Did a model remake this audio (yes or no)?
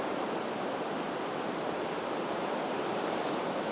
no